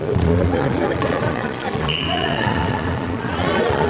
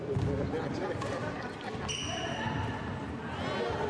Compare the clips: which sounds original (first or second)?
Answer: second